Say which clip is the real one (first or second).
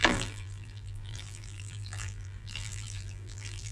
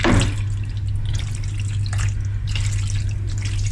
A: second